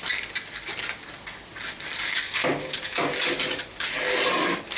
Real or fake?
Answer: real